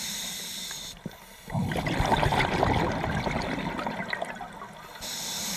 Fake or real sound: real